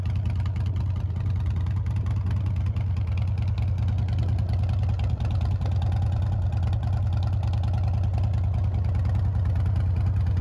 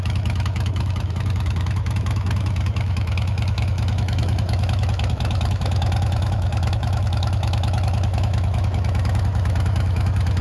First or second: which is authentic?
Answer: first